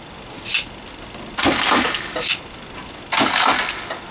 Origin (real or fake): real